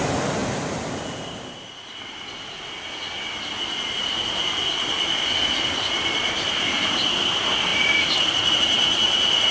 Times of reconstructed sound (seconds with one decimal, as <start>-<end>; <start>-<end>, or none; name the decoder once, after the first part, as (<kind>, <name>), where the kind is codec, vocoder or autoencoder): none